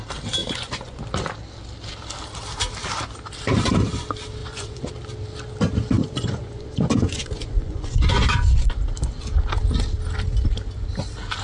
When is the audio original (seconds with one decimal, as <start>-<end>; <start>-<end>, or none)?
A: 0.0-0.4; 1.0-4.4; 4.9-6.0; 8.7-11.4